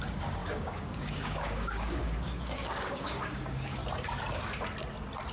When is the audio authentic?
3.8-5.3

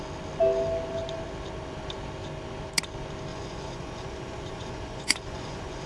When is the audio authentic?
0.0-3.3

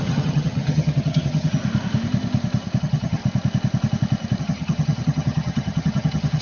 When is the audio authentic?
1.6-2.8; 3.2-4.4